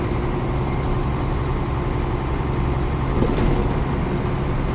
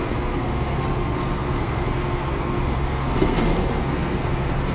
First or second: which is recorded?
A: first